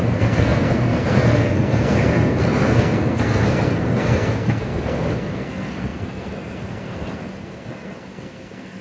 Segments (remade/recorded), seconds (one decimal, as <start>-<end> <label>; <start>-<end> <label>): 0.0-8.8 remade